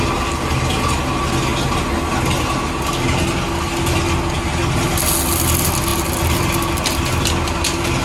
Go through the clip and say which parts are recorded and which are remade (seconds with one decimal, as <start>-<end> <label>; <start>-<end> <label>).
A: 0.0-8.0 recorded